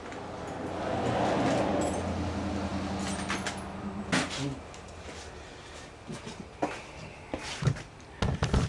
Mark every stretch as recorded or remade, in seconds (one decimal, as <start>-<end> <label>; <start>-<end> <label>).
0.0-8.7 recorded